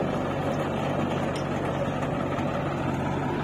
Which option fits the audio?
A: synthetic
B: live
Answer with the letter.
B